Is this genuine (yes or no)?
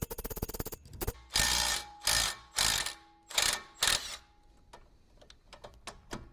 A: yes